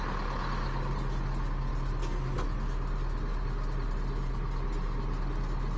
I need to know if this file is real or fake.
real